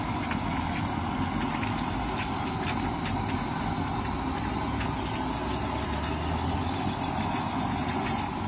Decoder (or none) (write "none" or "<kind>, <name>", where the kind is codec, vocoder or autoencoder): none